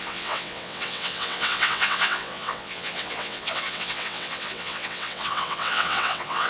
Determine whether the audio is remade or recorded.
remade